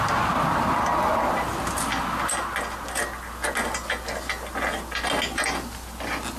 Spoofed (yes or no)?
no